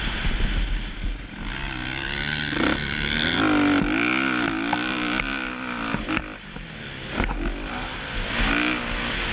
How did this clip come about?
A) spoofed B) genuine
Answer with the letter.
B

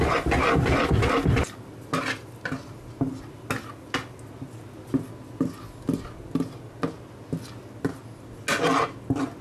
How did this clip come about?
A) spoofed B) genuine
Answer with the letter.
B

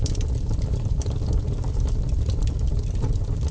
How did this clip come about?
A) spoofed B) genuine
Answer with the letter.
A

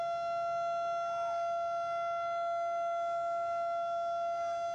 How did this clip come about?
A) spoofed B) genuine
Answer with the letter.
B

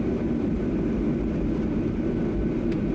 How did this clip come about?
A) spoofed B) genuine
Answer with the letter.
B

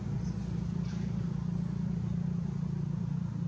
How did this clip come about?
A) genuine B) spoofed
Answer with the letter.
A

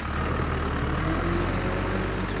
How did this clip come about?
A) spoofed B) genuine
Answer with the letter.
B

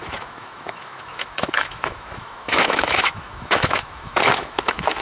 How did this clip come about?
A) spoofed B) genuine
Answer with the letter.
A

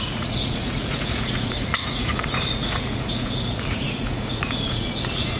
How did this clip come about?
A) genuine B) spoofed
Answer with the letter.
B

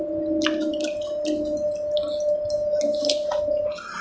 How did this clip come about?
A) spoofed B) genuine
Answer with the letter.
B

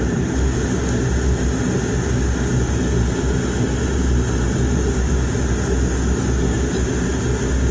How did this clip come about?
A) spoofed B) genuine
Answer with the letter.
B